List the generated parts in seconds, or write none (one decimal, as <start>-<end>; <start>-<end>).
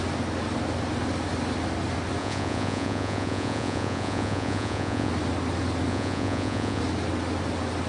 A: 2.2-5.1; 5.9-6.8